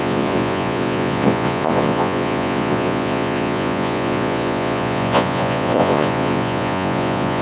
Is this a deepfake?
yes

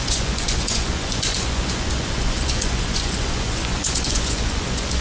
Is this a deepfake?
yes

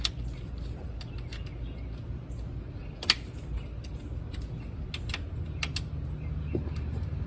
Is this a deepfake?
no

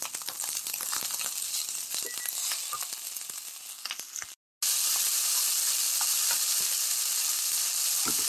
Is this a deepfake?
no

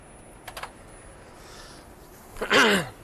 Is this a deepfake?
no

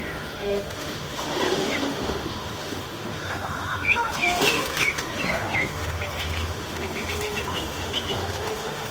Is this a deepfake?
yes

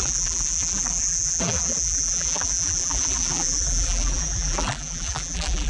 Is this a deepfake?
yes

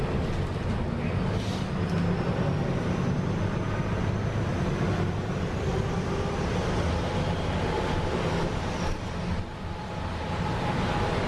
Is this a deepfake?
no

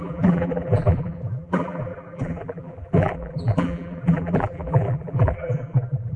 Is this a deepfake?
yes